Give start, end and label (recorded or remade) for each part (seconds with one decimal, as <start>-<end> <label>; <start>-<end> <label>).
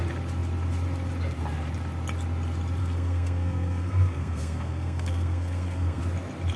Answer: 0.0-2.8 recorded; 2.8-6.0 remade; 6.0-6.6 recorded